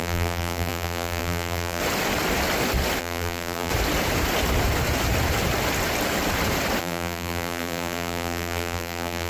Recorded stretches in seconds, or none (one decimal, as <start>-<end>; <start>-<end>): 1.8-3.0; 3.7-6.8